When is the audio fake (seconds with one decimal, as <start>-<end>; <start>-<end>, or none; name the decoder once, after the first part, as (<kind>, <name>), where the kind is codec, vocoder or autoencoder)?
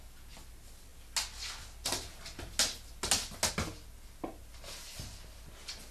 none